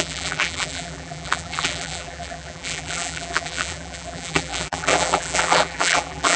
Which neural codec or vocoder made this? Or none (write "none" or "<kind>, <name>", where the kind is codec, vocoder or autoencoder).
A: vocoder, BigVGAN v2